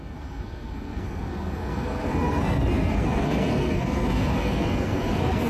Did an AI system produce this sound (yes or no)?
yes